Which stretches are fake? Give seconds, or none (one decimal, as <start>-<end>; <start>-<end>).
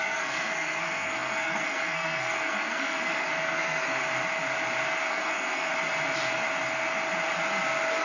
0.0-4.0; 5.1-5.7